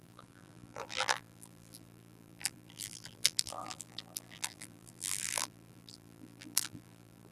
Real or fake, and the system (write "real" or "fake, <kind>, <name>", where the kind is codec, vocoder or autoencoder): fake, vocoder, BigVGAN v2